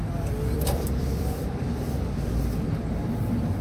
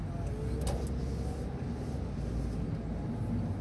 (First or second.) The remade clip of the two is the first